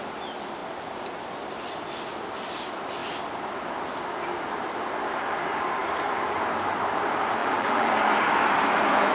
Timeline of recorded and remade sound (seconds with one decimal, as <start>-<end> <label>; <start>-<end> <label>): 0.0-7.4 recorded; 7.4-7.9 remade; 7.9-9.1 recorded